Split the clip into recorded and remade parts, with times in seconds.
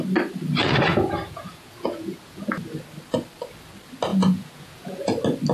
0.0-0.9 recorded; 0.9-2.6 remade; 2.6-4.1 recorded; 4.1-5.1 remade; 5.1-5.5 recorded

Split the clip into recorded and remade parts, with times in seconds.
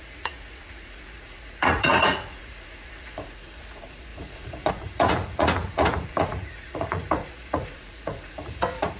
0.0-9.0 remade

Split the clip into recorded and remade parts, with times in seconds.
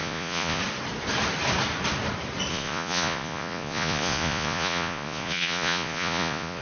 0.0-0.6 remade; 0.6-2.5 recorded; 2.5-6.6 remade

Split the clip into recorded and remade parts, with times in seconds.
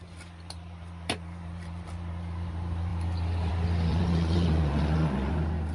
0.0-3.9 recorded; 3.9-5.3 remade; 5.3-5.7 recorded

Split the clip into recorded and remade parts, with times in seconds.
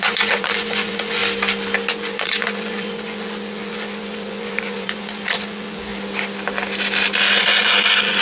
0.0-1.2 remade; 1.2-1.9 recorded; 1.9-5.9 remade; 5.9-7.4 recorded; 7.4-8.2 remade